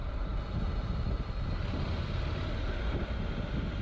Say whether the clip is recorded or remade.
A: recorded